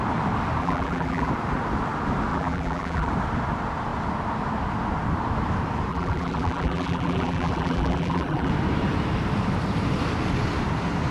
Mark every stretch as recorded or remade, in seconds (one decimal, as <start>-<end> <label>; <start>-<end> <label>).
0.0-0.6 recorded; 0.6-1.3 remade; 1.3-2.3 recorded; 2.3-3.1 remade; 3.1-5.9 recorded; 5.9-8.5 remade; 8.5-11.1 recorded